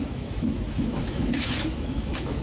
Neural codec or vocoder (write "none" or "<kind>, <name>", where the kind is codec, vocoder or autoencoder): autoencoder, DAC-VAE